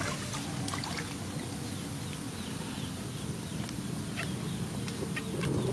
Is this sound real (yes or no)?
yes